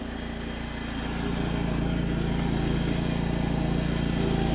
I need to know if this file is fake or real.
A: real